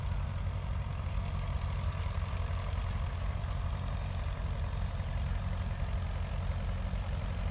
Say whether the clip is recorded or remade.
recorded